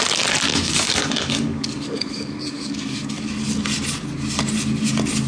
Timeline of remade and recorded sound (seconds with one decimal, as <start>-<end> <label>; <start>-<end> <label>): 0.0-0.5 recorded; 0.5-3.3 remade; 3.3-5.3 recorded